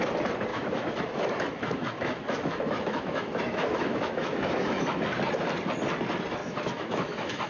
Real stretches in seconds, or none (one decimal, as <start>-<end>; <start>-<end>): 0.0-0.5; 5.0-6.4